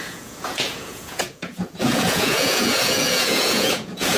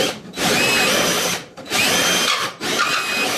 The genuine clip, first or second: second